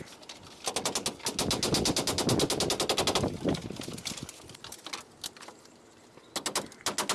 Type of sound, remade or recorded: recorded